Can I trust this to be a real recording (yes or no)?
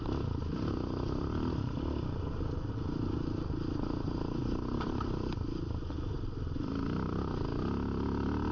yes